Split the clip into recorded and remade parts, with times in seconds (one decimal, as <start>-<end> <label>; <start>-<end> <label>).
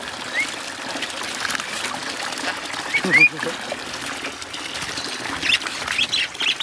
0.0-6.6 recorded